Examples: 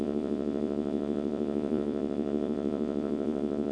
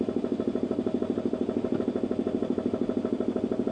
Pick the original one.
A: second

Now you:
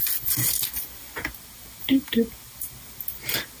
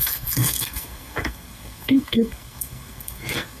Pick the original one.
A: first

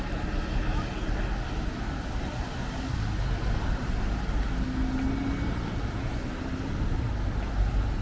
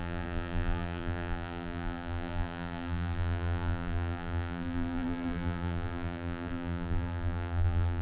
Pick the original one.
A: first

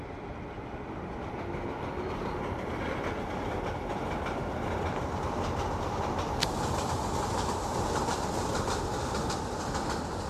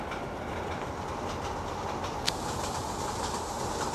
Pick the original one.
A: second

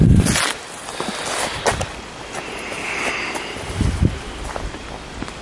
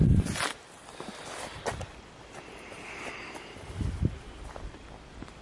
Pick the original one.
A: first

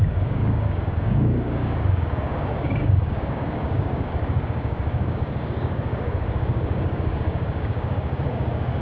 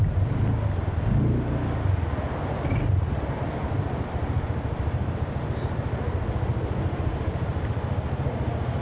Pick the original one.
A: second